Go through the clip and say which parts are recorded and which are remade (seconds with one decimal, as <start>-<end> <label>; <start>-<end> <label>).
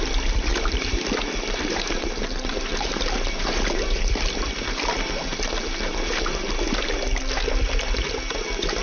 0.0-0.5 recorded; 0.5-4.1 remade; 4.1-8.8 recorded